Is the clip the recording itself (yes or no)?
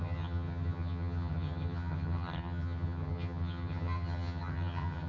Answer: no